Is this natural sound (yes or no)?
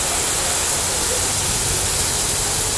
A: yes